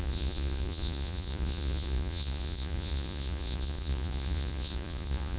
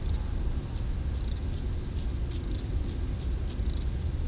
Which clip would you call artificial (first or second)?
first